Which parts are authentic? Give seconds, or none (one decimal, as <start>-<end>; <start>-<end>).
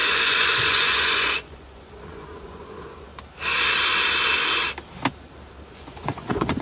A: 3.1-5.7